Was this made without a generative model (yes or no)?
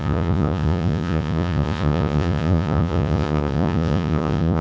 no